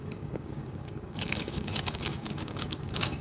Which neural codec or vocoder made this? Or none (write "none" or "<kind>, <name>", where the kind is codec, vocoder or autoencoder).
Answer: codec, DAC